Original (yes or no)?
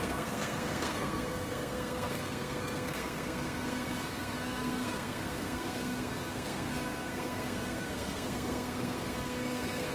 no